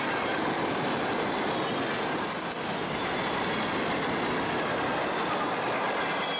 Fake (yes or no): no